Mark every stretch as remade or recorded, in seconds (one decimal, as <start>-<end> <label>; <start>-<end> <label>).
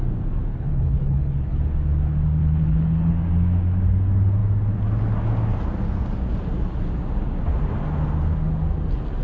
0.0-0.5 recorded; 0.5-1.6 remade; 1.6-2.4 recorded; 2.4-3.1 remade; 3.1-9.2 recorded